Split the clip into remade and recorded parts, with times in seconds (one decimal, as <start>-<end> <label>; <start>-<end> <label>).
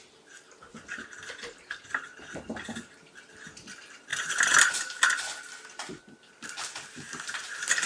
0.0-7.9 recorded